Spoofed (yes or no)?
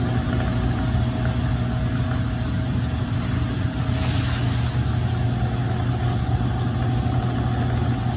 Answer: no